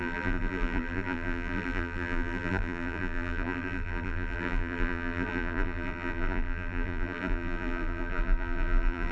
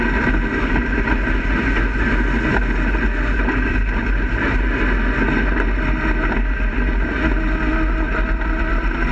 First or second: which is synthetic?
first